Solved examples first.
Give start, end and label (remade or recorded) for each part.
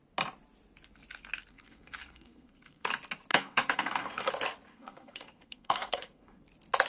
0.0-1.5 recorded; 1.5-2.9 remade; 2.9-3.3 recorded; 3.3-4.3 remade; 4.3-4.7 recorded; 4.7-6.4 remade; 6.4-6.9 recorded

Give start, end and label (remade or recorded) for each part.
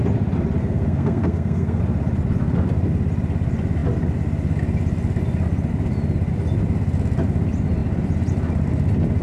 0.0-0.6 recorded; 0.6-1.8 remade; 1.8-9.2 recorded